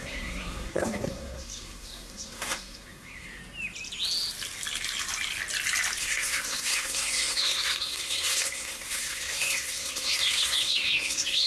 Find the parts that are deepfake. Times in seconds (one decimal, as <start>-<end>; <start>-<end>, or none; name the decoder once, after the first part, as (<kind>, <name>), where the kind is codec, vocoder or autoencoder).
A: 0.0-3.4 (codec, SNAC); 6.0-11.5